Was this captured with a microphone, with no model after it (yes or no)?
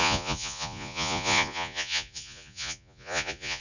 no